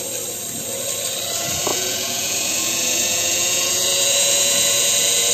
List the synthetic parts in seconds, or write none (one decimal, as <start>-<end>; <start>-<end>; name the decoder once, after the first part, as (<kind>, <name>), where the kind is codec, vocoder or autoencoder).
1.7-5.3 (vocoder, Vocos)